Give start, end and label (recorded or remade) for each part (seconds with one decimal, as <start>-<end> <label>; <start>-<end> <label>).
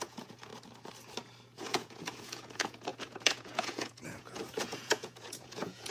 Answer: 0.0-0.5 remade; 0.5-1.4 recorded; 1.4-5.9 remade